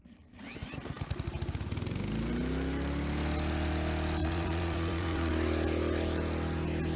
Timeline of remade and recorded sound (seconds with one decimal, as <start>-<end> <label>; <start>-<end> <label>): 0.0-4.2 recorded; 4.2-5.3 remade; 5.3-7.0 recorded

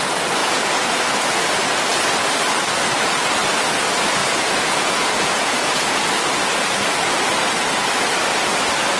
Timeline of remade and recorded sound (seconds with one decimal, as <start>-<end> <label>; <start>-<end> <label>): 0.0-0.4 recorded; 0.4-1.4 remade; 1.4-4.2 recorded; 4.2-6.1 remade; 6.1-9.0 recorded